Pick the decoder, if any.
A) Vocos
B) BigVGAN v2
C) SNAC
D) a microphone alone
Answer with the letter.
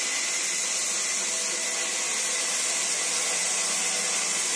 D